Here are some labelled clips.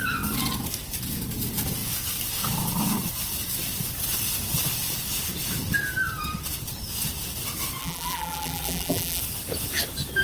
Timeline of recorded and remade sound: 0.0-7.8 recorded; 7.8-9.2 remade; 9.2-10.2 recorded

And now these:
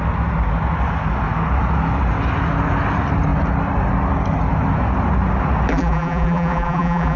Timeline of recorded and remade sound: 0.0-5.7 recorded; 5.7-7.2 remade

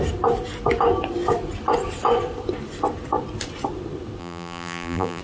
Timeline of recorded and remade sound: 0.0-4.2 recorded; 4.2-5.2 remade